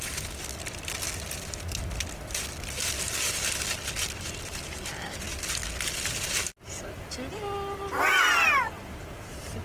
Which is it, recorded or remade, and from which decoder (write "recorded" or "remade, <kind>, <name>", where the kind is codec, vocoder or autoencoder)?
recorded